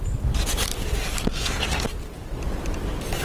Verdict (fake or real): real